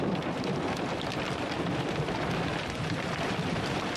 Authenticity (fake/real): fake